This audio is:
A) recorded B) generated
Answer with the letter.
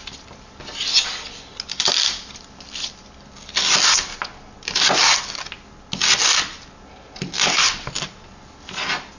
A